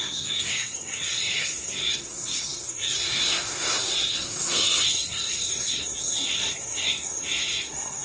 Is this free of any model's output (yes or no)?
no